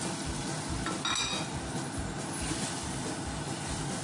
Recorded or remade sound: recorded